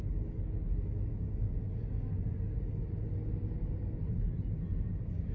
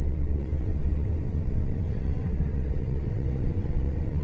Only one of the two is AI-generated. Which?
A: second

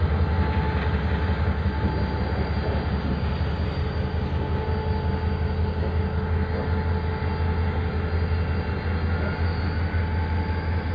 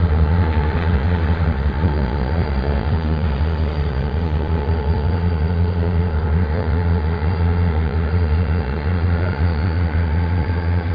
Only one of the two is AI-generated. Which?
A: second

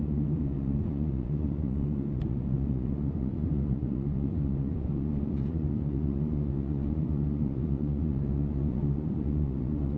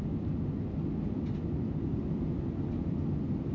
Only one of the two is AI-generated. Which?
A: first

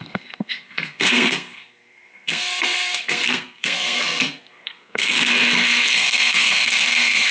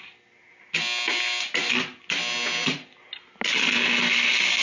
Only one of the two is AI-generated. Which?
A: first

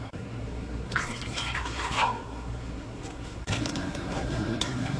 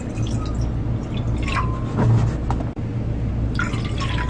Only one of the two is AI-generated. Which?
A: first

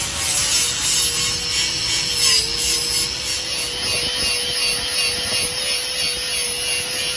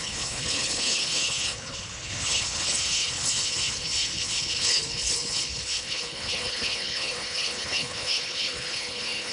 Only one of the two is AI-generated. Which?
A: second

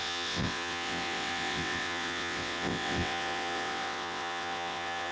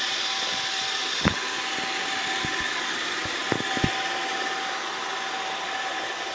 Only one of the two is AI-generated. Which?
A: first